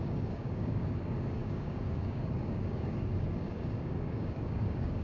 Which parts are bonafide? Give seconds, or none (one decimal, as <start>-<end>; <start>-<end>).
none